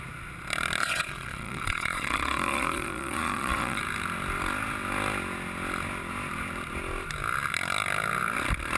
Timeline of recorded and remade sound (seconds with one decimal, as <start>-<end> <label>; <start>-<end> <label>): 0.0-0.8 recorded; 0.8-3.8 remade; 3.8-8.8 recorded